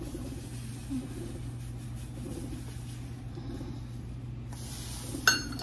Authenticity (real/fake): real